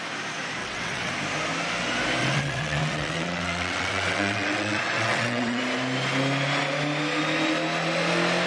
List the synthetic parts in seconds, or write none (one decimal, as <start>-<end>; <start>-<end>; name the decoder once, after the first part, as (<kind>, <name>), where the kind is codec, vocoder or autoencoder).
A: 0.6-1.1 (vocoder, WaveNeXt); 2.2-5.6